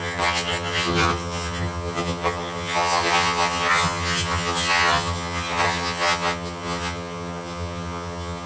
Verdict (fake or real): fake